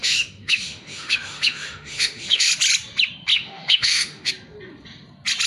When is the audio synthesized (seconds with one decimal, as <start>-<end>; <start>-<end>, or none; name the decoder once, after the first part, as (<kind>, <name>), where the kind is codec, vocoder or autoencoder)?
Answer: 0.0-2.5 (autoencoder, DAC-VAE); 3.3-4.3